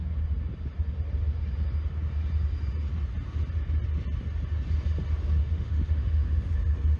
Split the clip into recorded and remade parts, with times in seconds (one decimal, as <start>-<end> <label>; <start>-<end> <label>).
0.0-5.4 recorded; 5.4-6.5 remade; 6.5-7.0 recorded